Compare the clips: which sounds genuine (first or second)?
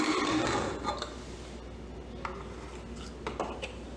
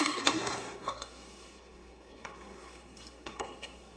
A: first